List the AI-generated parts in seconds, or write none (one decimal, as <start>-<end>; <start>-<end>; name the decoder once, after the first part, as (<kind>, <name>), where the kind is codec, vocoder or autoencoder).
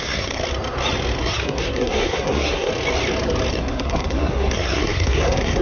0.0-0.4 (codec, SNAC); 1.2-2.7; 3.5-5.6